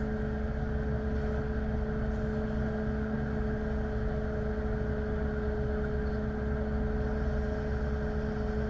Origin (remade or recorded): recorded